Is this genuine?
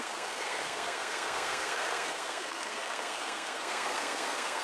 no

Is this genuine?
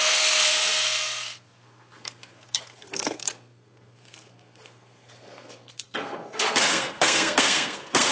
no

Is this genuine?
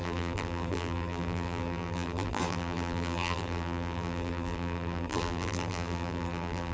no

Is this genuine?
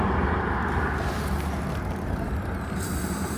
yes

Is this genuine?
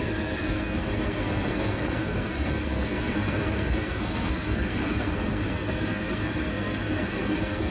no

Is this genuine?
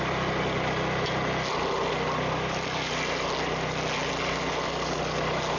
yes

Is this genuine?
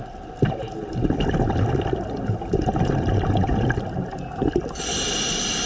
yes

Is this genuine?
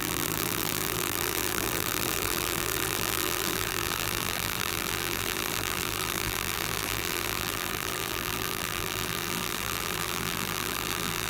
no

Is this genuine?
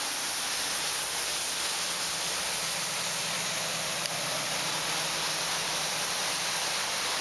yes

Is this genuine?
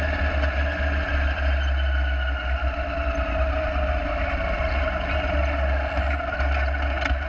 yes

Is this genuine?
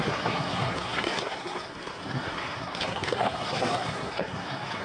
no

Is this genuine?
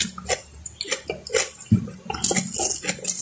yes